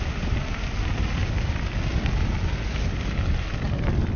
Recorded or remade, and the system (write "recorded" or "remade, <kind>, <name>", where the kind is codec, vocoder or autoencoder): recorded